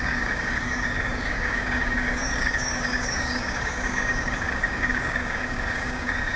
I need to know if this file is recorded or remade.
remade